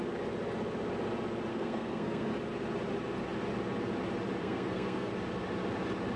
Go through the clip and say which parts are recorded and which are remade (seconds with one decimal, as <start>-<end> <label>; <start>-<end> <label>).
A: 0.0-1.5 recorded; 1.5-2.3 remade; 2.3-4.4 recorded; 4.4-5.1 remade; 5.1-6.2 recorded